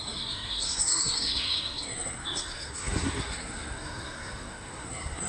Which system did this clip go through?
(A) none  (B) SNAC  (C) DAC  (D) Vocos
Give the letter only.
B